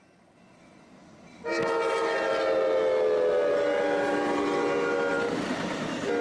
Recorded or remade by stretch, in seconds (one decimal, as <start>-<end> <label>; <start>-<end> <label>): 0.0-6.2 recorded